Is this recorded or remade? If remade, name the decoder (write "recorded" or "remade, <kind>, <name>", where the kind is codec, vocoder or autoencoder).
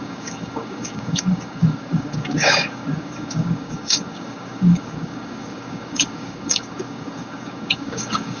remade, codec, DAC